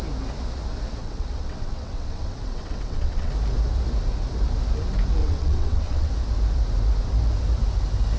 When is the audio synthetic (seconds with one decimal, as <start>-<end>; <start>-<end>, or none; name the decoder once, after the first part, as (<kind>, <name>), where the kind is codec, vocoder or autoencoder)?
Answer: 1.0-3.3 (vocoder, WaveNeXt); 5.2-6.1